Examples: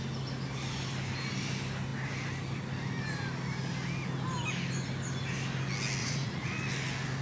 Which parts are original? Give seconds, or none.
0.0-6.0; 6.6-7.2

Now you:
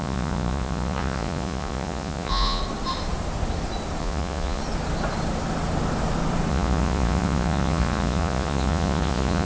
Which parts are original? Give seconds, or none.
2.6-4.0; 4.6-6.5

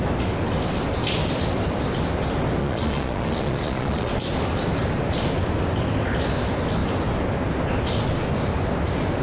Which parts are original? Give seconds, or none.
0.0-2.6; 4.1-9.2